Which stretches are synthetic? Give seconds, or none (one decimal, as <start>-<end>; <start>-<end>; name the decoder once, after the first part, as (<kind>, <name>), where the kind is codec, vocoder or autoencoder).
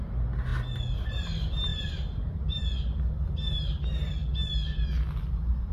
1.7-2.6 (vocoder, BigVGAN v2)